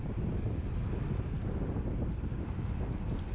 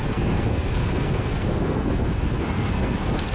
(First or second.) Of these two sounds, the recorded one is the first